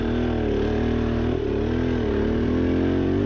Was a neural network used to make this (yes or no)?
no